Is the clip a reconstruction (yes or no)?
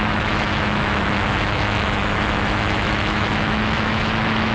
yes